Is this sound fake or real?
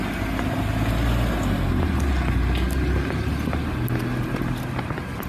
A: real